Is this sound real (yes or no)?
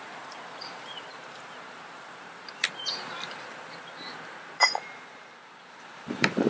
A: no